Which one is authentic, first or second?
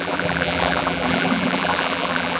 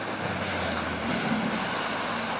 second